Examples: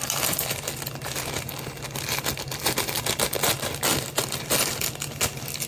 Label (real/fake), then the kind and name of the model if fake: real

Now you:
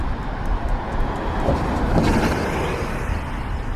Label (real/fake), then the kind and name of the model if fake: real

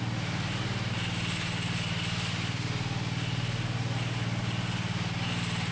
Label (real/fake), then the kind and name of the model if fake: real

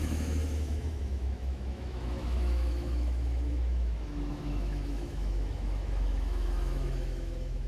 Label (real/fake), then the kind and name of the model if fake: fake, autoencoder, DAC-VAE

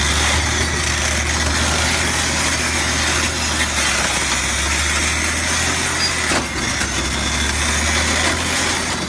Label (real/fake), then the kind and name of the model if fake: real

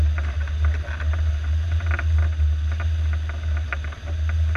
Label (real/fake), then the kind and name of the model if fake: real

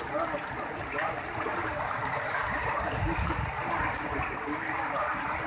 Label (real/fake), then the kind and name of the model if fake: real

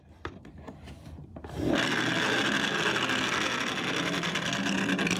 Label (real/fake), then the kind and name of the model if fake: real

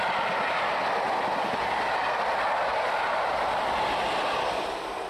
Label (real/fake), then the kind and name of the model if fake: real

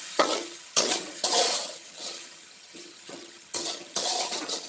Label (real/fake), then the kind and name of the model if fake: fake, vocoder, HiFi-GAN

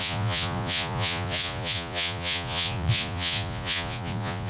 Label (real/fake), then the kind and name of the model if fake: fake, vocoder, Vocos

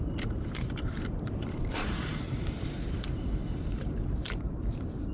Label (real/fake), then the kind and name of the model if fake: fake, vocoder, BigVGAN v2